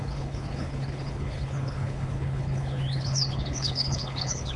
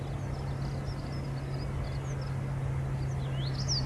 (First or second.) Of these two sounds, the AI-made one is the first